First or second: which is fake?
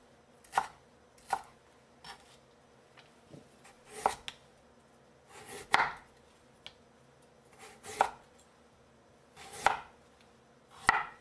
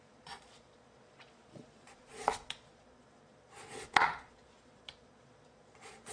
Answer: second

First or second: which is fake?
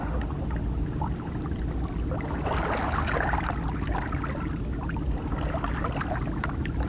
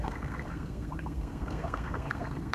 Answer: second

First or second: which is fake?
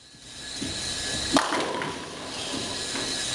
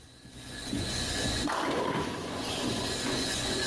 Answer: second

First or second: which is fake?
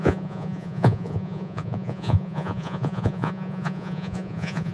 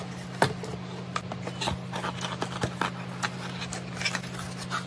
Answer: first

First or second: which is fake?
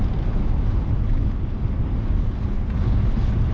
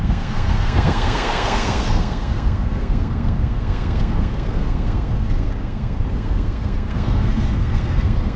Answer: second